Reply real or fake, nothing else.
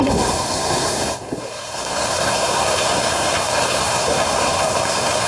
fake